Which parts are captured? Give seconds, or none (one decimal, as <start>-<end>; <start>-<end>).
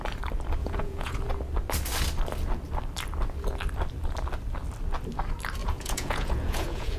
0.0-0.6; 1.3-5.6